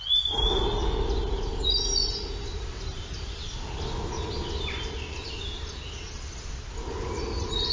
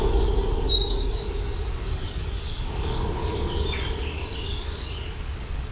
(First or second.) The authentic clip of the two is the first